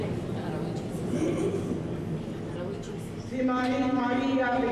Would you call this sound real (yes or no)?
yes